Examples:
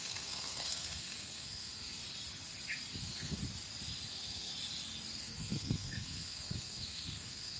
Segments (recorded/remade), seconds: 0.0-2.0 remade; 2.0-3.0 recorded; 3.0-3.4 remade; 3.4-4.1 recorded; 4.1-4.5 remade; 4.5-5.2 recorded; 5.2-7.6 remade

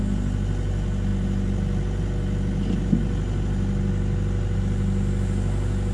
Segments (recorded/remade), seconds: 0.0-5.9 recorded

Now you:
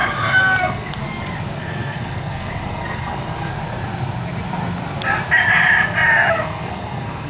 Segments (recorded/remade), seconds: 0.0-0.6 recorded; 0.6-1.0 remade; 1.0-1.6 recorded; 1.6-3.5 remade; 3.5-6.3 recorded; 6.3-7.3 remade

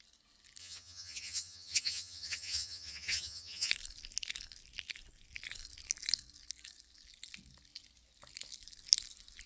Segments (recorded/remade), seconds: 0.0-0.6 recorded; 0.6-3.7 remade; 3.7-9.5 recorded